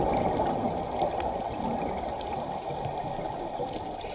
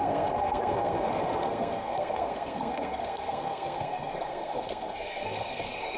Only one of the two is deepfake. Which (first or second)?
second